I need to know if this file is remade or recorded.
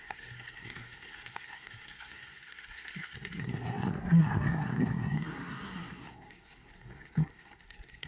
remade